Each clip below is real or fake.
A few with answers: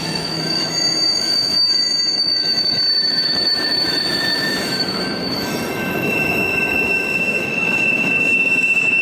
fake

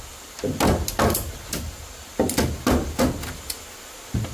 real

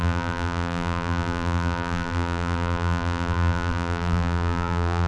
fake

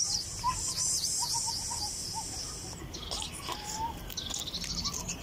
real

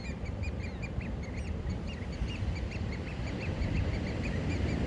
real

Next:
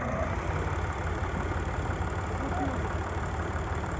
real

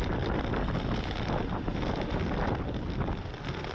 real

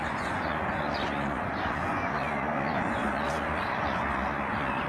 fake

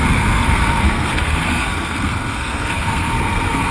fake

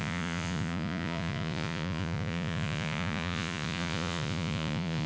fake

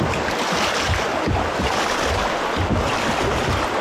real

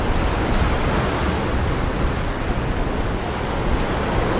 real